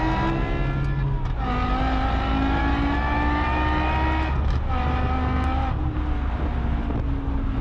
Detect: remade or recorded recorded